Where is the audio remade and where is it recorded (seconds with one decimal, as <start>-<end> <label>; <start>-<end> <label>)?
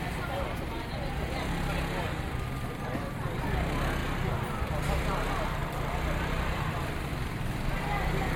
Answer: 0.0-4.0 recorded; 4.0-4.7 remade; 4.7-5.6 recorded; 5.6-7.8 remade; 7.8-8.4 recorded